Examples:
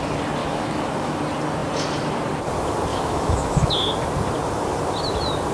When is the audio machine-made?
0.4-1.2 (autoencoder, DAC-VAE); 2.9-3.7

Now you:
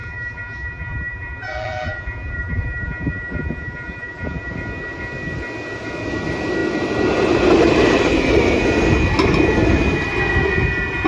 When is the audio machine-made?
0.0-4.5 (vocoder, BigVGAN v2)

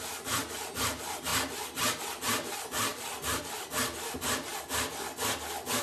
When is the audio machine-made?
0.0-1.3 (vocoder, BigVGAN v2); 2.0-4.5

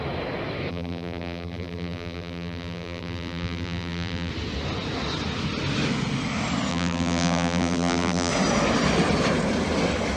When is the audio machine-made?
0.7-4.3 (vocoder, BigVGAN v2); 6.7-8.3